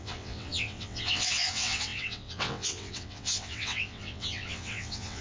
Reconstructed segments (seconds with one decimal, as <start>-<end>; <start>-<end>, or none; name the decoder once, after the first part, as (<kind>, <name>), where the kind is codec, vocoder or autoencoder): 0.0-5.2 (vocoder, WaveNeXt)